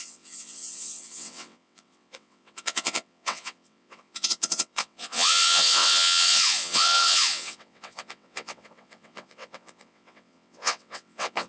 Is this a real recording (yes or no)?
no